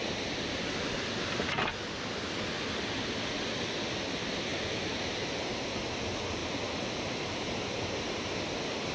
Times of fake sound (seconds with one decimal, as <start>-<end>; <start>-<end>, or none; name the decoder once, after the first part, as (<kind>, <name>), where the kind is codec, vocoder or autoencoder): 0.0-0.7 (vocoder, BigVGAN v2); 4.5-6.0